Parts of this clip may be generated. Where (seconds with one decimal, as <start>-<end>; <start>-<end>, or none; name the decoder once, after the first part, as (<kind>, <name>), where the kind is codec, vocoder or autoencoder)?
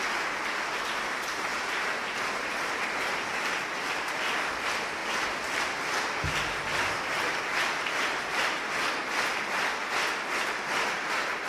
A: 1.5-3.5 (vocoder, BigVGAN v2); 5.0-5.8